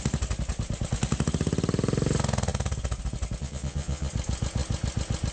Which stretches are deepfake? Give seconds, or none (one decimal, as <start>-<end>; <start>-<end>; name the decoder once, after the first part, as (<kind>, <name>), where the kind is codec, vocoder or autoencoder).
3.4-4.1 (vocoder, Vocos)